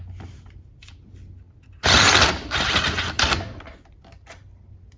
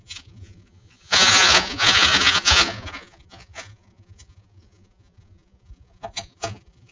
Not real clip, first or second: second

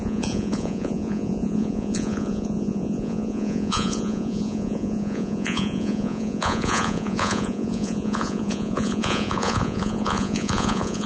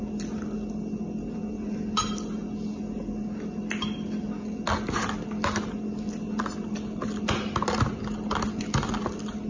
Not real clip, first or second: first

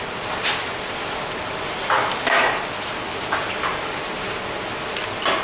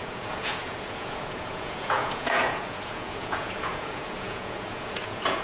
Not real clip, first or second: second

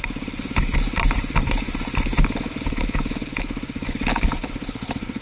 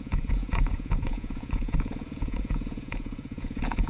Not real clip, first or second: second